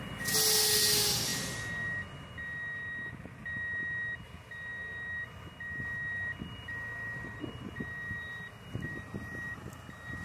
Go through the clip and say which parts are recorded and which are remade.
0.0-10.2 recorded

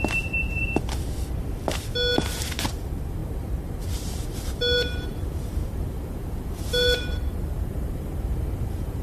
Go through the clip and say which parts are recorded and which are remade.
0.0-0.6 remade; 0.6-2.7 recorded; 2.7-9.0 remade

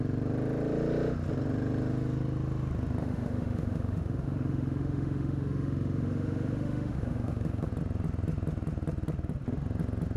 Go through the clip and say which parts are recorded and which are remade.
0.0-3.0 recorded; 3.0-7.7 remade; 7.7-10.2 recorded

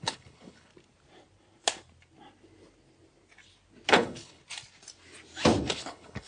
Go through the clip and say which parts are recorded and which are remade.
0.0-0.7 remade; 0.7-3.9 recorded; 3.9-4.4 remade; 4.4-5.7 recorded; 5.7-6.3 remade

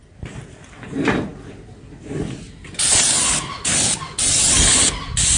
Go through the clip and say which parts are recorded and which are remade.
0.0-5.4 recorded